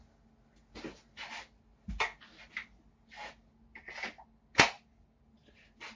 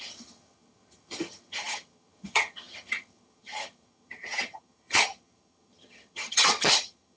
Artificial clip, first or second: second